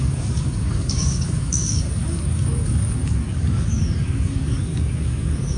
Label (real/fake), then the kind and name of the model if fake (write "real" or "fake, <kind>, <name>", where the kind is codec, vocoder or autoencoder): fake, codec, DAC